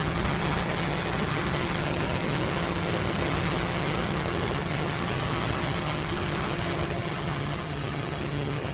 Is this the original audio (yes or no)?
no